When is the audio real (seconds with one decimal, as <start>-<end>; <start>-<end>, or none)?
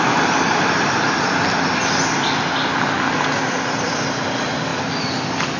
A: 0.0-5.6